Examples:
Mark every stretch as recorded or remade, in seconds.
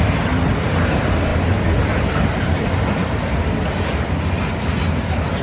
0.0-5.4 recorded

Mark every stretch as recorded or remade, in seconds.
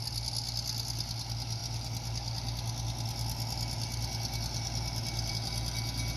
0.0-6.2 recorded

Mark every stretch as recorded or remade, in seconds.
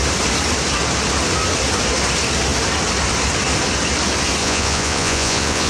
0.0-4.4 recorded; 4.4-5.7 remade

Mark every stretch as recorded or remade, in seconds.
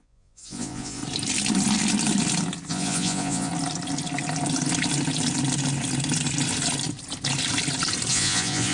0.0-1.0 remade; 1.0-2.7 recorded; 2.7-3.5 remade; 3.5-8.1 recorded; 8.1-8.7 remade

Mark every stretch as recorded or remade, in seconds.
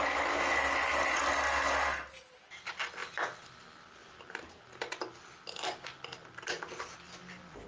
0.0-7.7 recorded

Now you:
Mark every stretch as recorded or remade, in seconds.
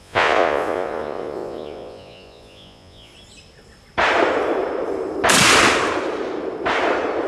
0.0-3.1 remade; 3.1-7.3 recorded